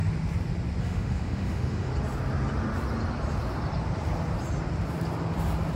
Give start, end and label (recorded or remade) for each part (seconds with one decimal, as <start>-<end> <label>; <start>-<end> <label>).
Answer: 0.0-0.8 recorded; 0.8-1.9 remade; 1.9-5.8 recorded